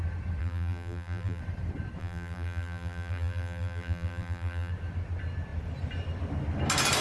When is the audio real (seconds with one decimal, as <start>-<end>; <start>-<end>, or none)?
0.0-0.4; 1.4-2.0; 4.7-7.0